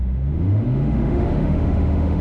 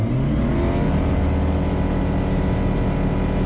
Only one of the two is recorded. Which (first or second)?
second